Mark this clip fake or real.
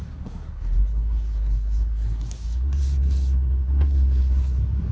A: fake